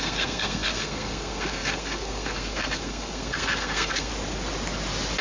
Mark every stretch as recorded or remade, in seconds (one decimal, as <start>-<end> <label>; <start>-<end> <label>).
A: 0.0-4.1 remade; 4.1-5.2 recorded